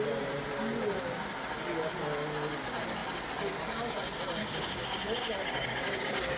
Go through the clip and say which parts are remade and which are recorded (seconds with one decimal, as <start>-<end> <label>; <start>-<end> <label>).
0.0-4.4 recorded; 4.4-6.4 remade